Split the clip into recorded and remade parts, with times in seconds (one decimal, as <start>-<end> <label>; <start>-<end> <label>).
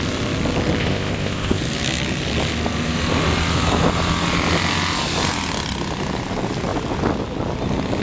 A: 0.0-0.8 recorded; 0.8-1.6 remade; 1.6-8.0 recorded